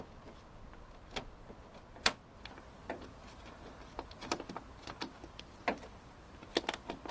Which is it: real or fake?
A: real